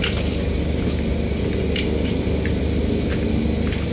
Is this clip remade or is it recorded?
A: recorded